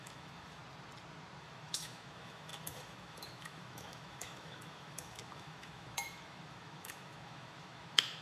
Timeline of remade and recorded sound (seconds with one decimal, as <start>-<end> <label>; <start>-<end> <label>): 0.0-0.6 remade; 0.6-1.4 recorded; 1.4-8.2 remade